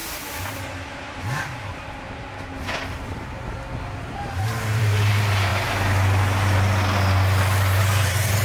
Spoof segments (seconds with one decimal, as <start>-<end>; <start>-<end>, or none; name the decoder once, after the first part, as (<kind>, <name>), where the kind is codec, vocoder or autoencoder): 4.5-5.5 (vocoder, BigVGAN v2); 7.8-8.4